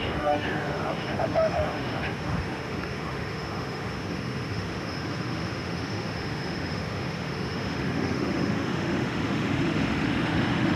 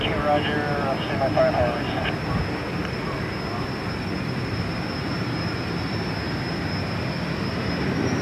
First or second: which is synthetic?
first